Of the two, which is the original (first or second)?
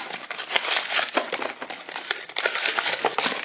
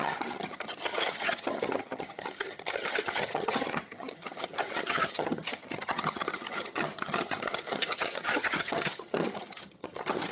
first